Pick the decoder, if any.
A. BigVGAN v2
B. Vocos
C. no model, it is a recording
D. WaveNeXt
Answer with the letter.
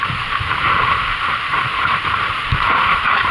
A